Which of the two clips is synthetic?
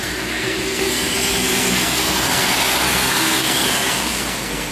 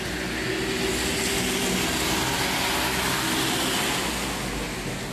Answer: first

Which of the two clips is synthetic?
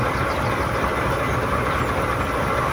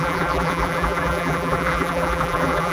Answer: second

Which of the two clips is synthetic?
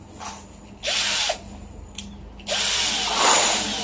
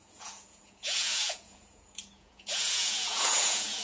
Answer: second